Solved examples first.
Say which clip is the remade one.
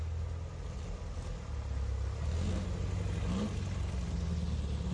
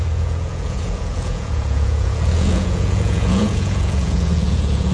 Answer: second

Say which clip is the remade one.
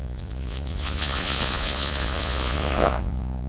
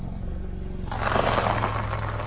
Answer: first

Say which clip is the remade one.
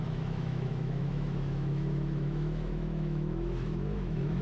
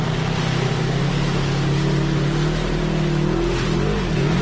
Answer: first